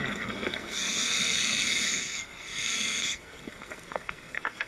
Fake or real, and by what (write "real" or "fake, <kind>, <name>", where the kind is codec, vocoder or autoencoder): fake, codec, SNAC